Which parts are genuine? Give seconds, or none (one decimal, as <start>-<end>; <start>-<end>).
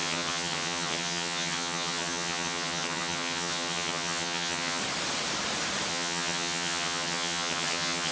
4.8-5.9